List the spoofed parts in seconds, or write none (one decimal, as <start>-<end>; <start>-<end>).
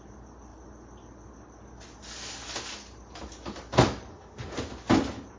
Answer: 4.1-4.6